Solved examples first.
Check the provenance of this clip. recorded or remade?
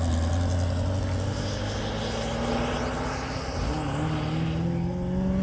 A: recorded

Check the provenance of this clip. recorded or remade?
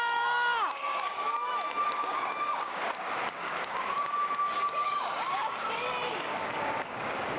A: remade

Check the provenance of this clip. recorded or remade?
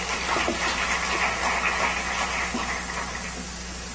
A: recorded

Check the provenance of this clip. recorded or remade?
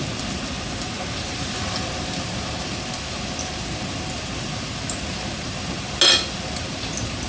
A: recorded